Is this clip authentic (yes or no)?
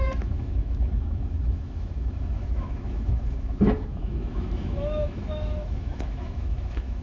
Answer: no